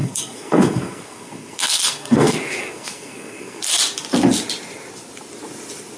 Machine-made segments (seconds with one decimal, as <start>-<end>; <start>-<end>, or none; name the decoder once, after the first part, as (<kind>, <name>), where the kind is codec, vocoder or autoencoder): 0.0-3.6 (codec, SNAC)

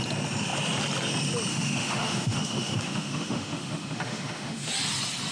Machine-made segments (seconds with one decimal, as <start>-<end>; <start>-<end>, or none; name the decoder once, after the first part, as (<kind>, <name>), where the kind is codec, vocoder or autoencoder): 1.5-4.7 (autoencoder, DAC-VAE)

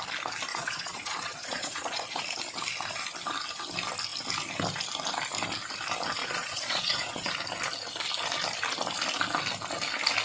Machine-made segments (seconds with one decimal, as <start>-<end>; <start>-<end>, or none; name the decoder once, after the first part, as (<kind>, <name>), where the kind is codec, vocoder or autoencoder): 0.5-2.2 (vocoder, Vocos); 6.2-7.3

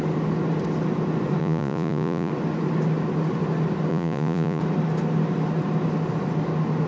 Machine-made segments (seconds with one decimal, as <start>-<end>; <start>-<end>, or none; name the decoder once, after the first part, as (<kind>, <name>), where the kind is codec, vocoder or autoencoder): 1.4-2.3 (vocoder, Vocos); 3.9-4.6

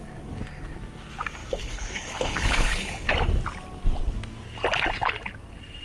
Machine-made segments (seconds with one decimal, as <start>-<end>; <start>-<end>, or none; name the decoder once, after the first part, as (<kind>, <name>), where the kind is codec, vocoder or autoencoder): 1.4-3.1 (codec, HILCodec)

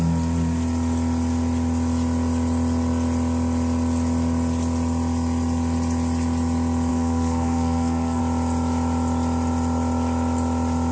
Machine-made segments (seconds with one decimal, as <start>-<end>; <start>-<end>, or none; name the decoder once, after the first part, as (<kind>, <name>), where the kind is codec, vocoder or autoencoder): 6.9-8.2 (codec, SNAC)

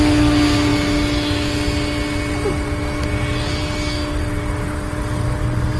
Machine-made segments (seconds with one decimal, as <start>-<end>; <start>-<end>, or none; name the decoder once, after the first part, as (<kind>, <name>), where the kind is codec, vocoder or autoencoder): none

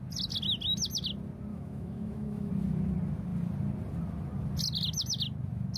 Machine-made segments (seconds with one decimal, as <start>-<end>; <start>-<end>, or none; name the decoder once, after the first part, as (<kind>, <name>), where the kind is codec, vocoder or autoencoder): 1.5-2.5 (autoencoder, DAC-VAE)